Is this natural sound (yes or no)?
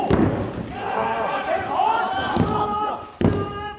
yes